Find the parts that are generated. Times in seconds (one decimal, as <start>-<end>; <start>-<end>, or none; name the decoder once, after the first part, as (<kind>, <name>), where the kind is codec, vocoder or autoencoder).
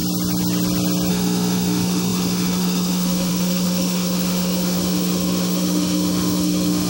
1.1-6.9 (autoencoder, DAC-VAE)